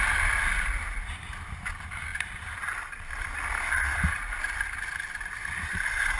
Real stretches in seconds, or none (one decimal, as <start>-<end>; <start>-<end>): 0.0-6.2